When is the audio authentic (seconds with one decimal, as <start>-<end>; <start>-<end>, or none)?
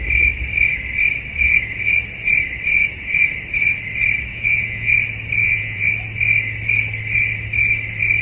0.0-4.3; 4.9-5.4; 5.9-8.2